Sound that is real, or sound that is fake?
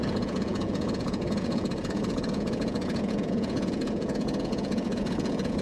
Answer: fake